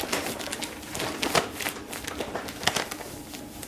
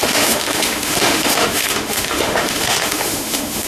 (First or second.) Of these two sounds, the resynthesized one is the second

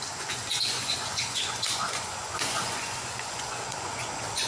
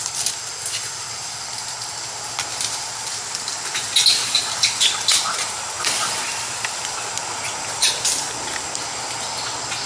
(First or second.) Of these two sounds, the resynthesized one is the first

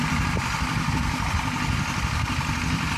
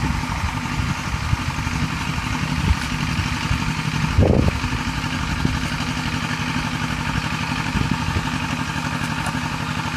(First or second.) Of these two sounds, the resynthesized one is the first